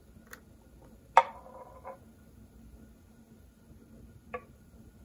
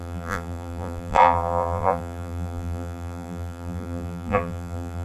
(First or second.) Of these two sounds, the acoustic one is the first